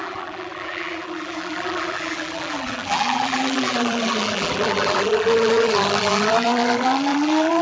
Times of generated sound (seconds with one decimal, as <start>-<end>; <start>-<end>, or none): 0.0-7.6